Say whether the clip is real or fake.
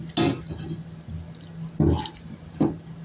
real